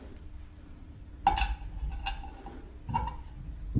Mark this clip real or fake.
real